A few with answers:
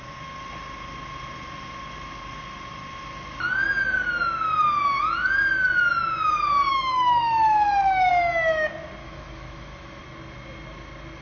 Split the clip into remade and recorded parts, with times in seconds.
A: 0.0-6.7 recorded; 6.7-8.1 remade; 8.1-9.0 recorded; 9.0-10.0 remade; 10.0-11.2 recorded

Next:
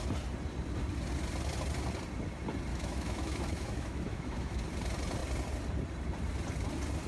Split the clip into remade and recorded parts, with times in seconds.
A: 0.0-2.7 recorded; 2.7-4.6 remade; 4.6-7.1 recorded

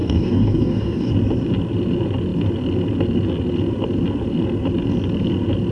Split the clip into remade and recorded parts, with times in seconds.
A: 0.0-1.1 remade; 1.1-5.7 recorded

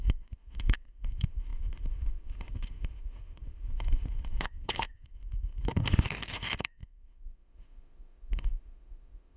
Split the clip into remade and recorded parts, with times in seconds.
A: 0.0-9.4 remade